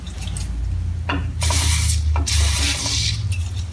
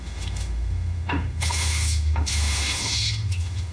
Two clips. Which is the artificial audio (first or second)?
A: second